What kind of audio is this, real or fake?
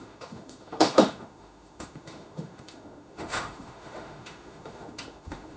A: fake